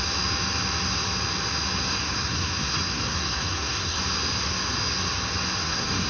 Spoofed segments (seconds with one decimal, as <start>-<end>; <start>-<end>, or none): 1.9-4.0; 5.6-6.1